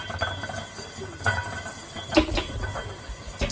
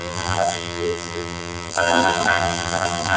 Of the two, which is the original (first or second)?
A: first